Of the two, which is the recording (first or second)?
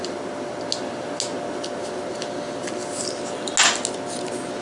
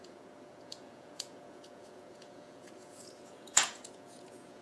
first